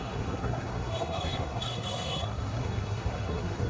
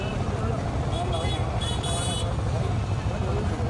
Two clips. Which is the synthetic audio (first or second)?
first